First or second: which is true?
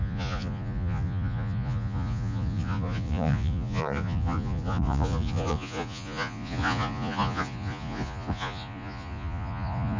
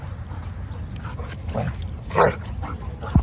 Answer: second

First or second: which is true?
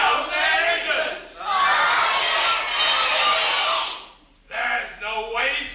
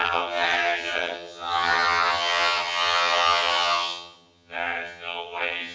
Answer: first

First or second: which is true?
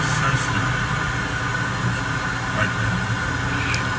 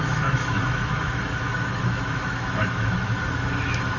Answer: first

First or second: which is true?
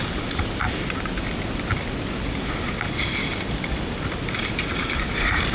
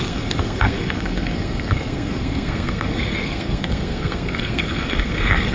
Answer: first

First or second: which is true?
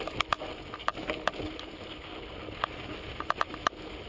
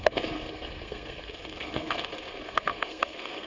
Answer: first